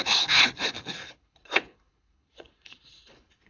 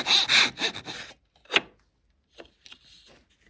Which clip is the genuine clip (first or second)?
second